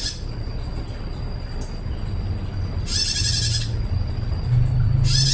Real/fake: real